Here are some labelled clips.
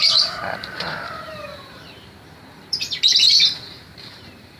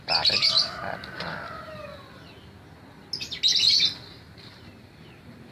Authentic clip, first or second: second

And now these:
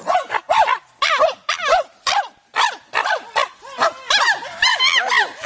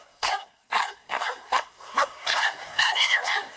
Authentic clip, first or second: first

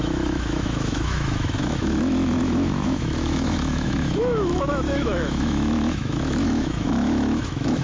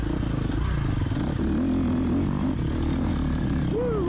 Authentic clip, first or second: second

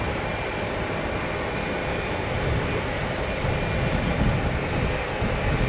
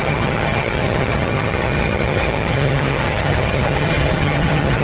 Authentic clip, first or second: first